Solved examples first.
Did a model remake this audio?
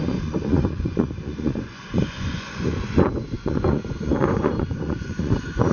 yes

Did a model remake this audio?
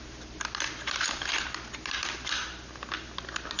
no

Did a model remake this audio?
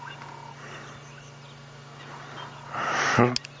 no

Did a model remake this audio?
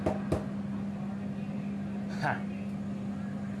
no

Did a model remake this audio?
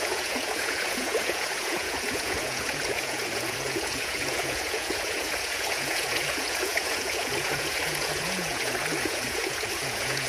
yes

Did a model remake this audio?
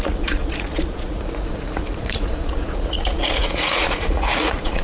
yes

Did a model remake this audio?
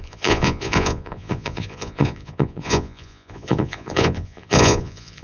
yes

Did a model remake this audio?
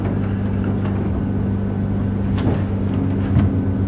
no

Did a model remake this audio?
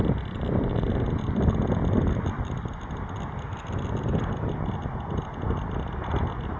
no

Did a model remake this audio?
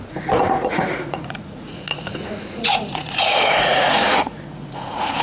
yes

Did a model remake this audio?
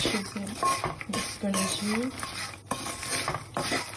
no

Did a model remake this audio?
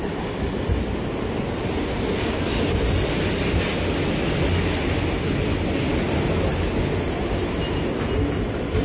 no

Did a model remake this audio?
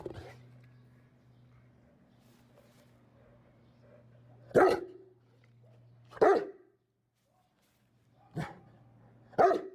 no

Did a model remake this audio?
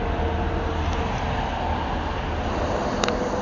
no